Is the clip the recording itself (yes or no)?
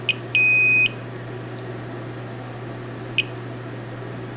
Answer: yes